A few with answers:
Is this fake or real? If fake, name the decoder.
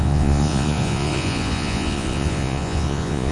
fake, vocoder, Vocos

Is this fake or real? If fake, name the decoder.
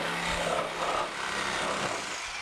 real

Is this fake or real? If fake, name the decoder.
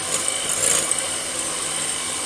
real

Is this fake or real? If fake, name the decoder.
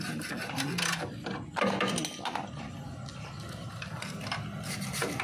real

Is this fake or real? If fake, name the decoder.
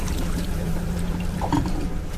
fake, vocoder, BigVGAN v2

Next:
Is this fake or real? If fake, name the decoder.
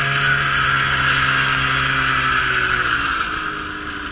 real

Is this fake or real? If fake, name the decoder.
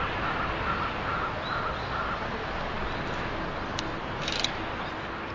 real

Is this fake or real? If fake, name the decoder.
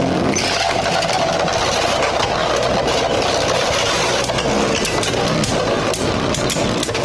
real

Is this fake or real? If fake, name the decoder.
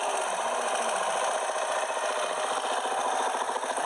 real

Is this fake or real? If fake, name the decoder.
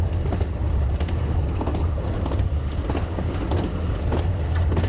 real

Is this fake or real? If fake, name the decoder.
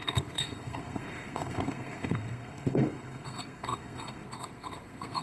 fake, codec, SNAC